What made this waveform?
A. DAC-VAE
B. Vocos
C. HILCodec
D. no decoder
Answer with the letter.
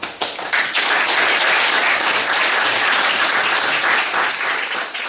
D